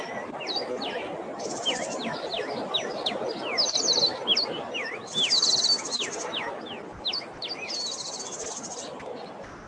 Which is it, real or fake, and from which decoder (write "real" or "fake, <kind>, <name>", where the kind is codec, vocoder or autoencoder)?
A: real